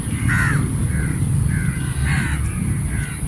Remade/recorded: recorded